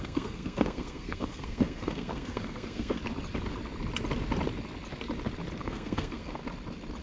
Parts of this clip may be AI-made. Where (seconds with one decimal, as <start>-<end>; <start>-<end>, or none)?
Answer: 0.0-3.0; 5.6-6.4